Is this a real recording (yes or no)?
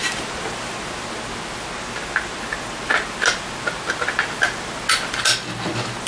yes